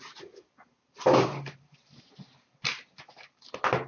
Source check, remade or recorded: recorded